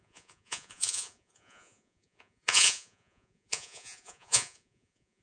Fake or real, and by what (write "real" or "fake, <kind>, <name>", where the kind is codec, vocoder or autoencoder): fake, vocoder, Vocos